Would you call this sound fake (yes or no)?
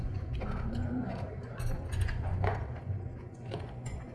yes